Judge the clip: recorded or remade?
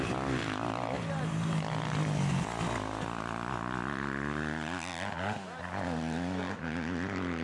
recorded